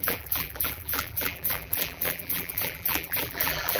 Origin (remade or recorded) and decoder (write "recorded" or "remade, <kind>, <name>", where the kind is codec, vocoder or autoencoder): remade, vocoder, BigVGAN v2